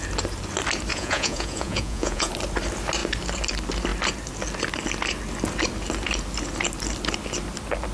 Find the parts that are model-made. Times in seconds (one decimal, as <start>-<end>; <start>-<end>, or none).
0.9-2.3